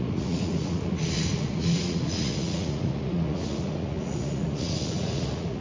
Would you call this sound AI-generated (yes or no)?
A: yes